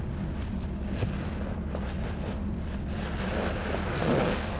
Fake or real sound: real